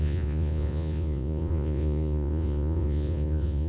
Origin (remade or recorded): remade